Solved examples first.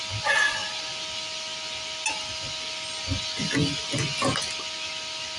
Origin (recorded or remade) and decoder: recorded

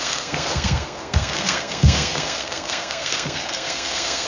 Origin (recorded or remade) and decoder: remade, codec, SNAC